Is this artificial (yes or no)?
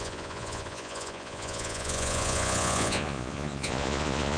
yes